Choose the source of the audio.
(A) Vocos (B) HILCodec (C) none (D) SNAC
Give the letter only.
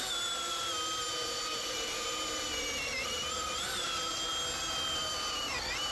C